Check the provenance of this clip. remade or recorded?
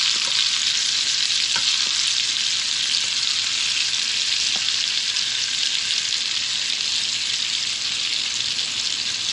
recorded